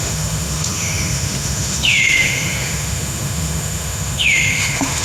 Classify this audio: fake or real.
fake